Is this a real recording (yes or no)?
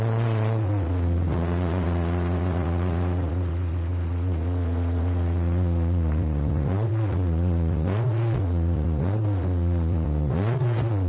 no